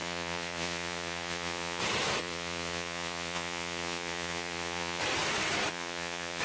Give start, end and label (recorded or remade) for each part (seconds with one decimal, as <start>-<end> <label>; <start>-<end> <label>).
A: 0.0-1.8 remade; 1.8-2.2 recorded; 2.2-5.0 remade; 5.0-5.7 recorded; 5.7-6.4 remade